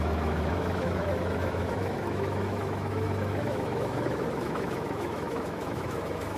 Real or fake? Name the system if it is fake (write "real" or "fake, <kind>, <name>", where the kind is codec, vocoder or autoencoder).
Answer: fake, autoencoder, DAC-VAE